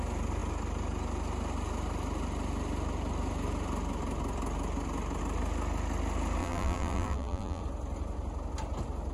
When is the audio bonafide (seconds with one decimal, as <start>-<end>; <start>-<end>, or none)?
0.0-6.4; 7.6-9.1